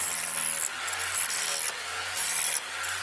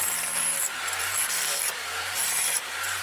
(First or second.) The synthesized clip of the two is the second